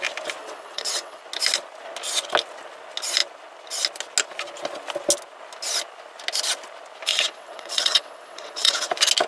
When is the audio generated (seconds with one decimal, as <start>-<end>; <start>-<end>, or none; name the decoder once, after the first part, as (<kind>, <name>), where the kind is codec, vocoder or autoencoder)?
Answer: 0.4-1.2 (vocoder, WaveNeXt); 7.1-8.9